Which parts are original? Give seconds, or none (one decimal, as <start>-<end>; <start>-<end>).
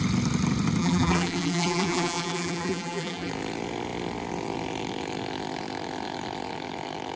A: 0.0-0.8; 3.3-7.2